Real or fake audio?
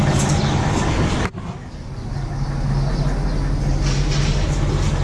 real